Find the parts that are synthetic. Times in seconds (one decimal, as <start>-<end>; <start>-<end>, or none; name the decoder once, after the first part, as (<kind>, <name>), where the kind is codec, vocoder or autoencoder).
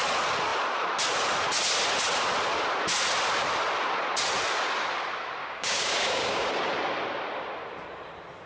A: 5.4-6.5 (codec, DAC)